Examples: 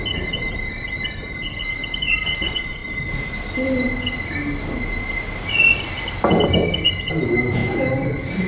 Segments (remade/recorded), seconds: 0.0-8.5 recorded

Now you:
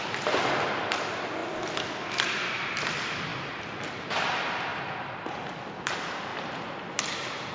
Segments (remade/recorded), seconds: 0.0-1.4 remade; 1.4-2.0 recorded; 2.0-4.7 remade; 4.7-5.3 recorded; 5.3-6.3 remade; 6.3-7.5 recorded

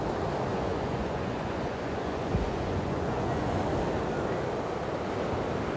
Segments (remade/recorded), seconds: 0.0-0.5 recorded; 0.5-3.6 remade; 3.6-5.8 recorded

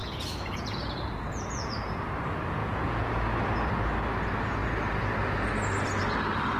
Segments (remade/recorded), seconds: 0.0-2.1 remade; 2.1-2.6 recorded; 2.6-3.4 remade; 3.4-6.6 recorded

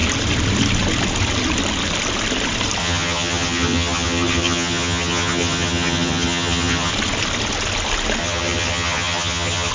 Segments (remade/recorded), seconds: 0.0-2.8 recorded; 2.8-6.9 remade; 6.9-8.2 recorded; 8.2-9.7 remade

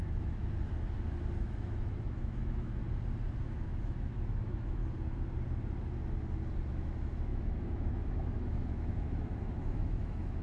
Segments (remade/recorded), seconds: 0.0-0.4 remade; 0.4-1.4 recorded; 1.4-2.8 remade; 2.8-3.4 recorded; 3.4-4.8 remade; 4.8-6.7 recorded; 6.7-10.4 remade

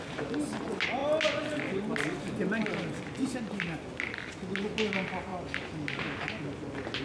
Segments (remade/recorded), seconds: 0.0-7.0 recorded

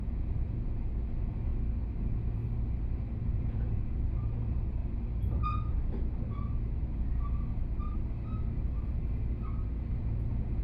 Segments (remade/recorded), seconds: 0.0-1.5 remade; 1.5-2.0 recorded; 2.0-2.4 remade; 2.4-3.2 recorded; 3.2-4.8 remade; 4.8-9.9 recorded; 9.9-10.6 remade